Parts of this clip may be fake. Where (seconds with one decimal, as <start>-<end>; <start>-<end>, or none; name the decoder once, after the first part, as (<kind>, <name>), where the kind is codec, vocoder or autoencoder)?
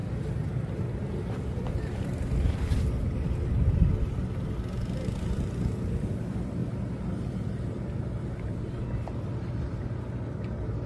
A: none